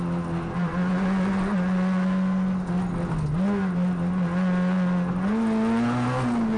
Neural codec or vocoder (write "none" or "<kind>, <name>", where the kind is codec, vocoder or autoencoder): none